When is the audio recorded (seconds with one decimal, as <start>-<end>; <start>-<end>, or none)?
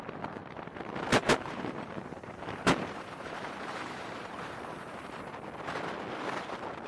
0.0-1.2; 5.3-6.9